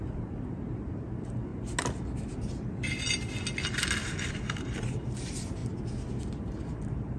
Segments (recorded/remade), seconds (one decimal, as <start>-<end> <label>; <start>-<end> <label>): 0.0-1.5 remade; 1.5-4.3 recorded; 4.3-5.6 remade; 5.6-6.2 recorded; 6.2-7.2 remade